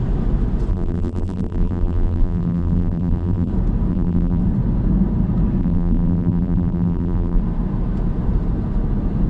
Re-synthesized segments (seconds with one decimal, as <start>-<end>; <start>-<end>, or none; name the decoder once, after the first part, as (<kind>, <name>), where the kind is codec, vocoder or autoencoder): 0.7-3.5 (vocoder, BigVGAN v2); 3.9-4.4; 5.6-7.4